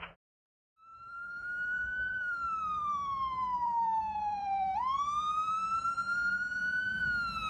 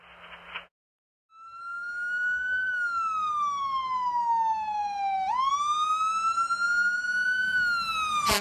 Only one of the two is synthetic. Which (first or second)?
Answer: first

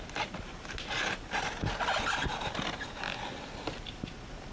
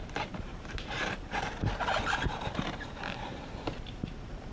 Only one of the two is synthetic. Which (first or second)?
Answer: second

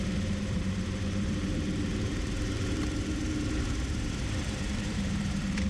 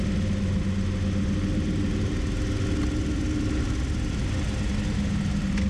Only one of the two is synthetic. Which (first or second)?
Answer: first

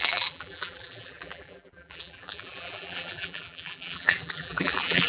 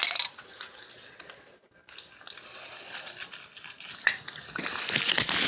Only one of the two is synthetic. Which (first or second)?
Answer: first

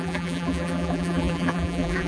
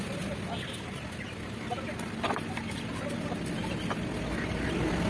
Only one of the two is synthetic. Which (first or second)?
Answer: first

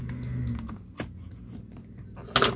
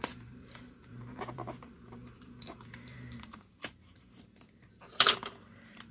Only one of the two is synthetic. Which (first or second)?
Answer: second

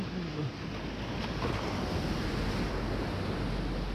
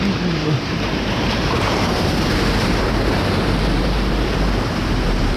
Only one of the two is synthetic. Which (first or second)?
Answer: second